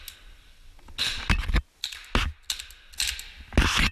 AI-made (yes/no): no